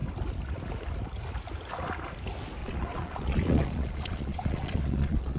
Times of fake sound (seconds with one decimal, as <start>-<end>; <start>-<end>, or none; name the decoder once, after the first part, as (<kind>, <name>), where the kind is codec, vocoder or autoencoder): 2.6-5.4 (vocoder, Vocos)